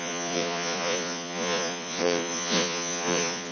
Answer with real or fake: fake